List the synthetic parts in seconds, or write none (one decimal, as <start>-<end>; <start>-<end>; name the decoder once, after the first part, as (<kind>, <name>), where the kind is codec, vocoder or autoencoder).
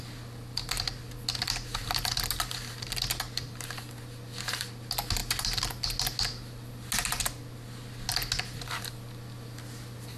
none